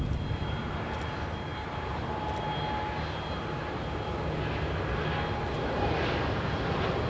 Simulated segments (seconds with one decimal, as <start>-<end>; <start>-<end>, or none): none